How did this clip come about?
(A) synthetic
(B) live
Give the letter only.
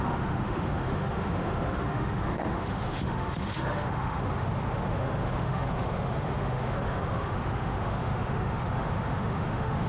A